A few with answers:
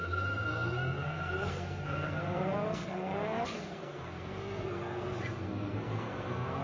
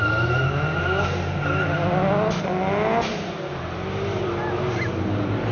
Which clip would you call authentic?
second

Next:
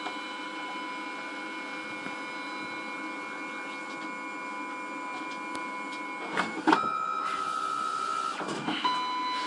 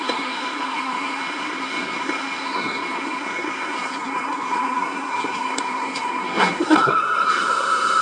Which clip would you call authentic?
first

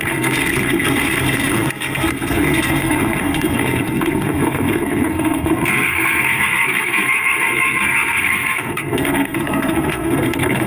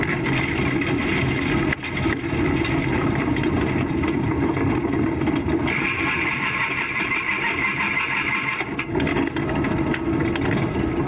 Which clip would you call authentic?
second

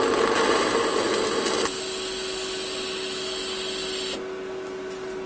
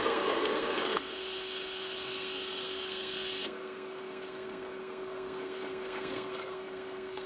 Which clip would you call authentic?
first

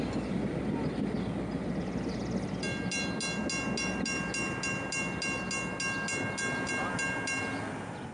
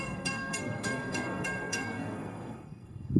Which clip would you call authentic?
first